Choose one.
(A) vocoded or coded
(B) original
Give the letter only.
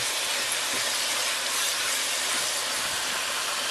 B